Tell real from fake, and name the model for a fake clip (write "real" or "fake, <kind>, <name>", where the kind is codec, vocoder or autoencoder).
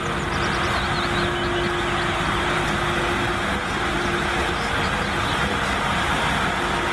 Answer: real